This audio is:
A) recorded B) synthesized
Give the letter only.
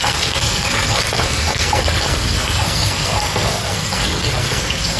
B